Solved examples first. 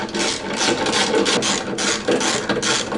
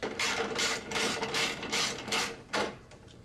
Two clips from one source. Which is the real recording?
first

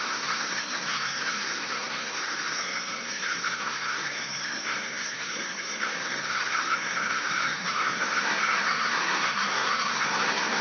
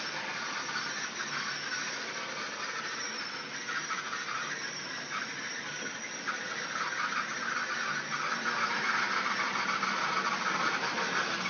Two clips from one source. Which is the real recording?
second